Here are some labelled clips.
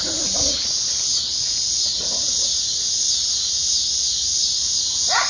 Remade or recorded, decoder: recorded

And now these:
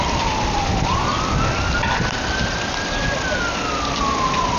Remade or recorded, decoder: recorded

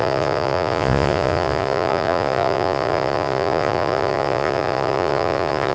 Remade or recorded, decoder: remade, vocoder, Vocos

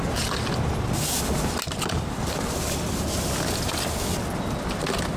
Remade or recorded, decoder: recorded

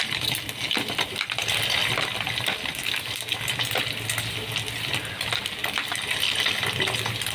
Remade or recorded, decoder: recorded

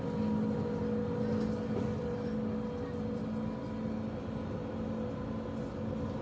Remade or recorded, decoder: recorded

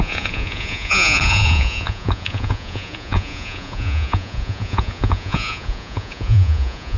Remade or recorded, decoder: remade, vocoder, Vocos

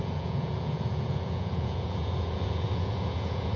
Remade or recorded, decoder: remade, vocoder, Vocos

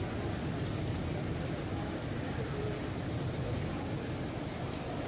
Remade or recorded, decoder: recorded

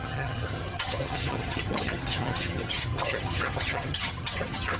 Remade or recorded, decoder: remade, vocoder, HiFi-GAN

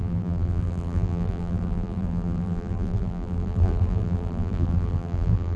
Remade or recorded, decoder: remade, vocoder, BigVGAN v2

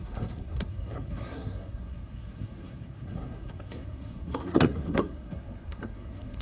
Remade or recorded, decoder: remade, codec, SNAC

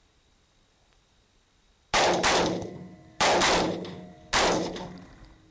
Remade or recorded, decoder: recorded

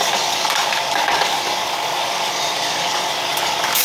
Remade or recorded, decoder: remade, codec, DAC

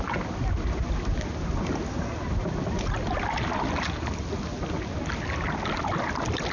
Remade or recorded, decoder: recorded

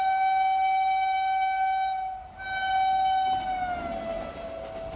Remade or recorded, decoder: recorded